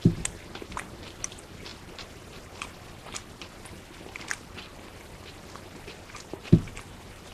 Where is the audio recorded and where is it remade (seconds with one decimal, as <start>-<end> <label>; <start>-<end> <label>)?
0.0-6.4 recorded; 6.4-7.3 remade